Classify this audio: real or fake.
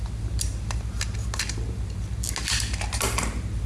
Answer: real